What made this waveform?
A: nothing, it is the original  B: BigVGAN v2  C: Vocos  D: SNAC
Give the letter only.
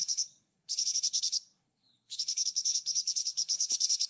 D